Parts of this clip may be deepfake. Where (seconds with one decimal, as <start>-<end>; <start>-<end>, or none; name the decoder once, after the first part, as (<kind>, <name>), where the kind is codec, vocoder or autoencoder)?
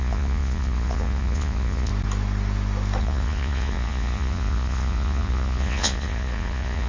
0.0-1.9 (vocoder, Vocos); 3.0-6.9